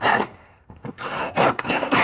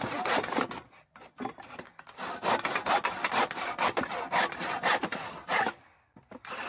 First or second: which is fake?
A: first